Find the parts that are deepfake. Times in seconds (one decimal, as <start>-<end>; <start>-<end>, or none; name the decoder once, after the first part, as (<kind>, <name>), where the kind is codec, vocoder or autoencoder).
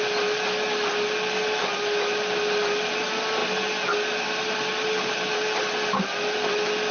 none